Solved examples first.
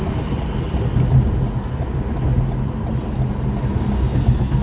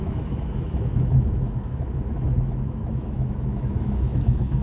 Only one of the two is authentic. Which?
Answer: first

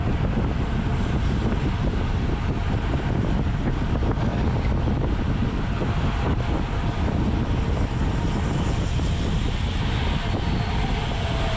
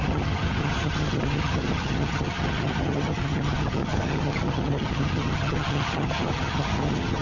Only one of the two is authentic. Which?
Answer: first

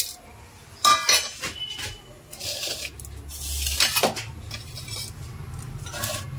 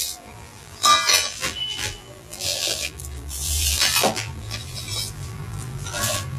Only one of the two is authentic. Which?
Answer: first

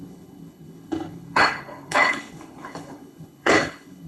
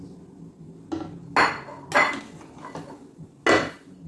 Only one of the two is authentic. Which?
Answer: second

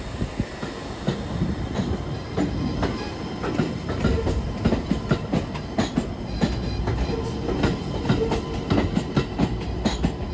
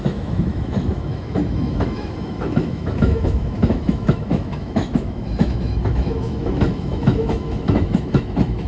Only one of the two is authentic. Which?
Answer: first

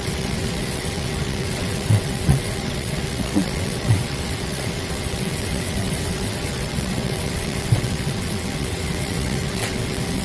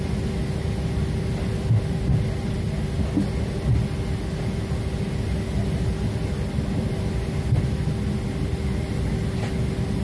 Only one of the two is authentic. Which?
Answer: second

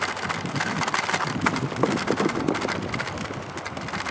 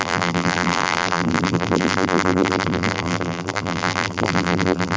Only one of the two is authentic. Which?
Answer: first